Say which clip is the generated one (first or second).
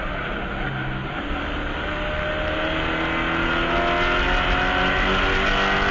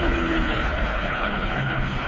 second